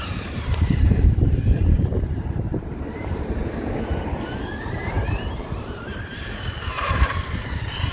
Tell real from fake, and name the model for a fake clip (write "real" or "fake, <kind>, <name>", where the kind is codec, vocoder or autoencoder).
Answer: fake, vocoder, BigVGAN v2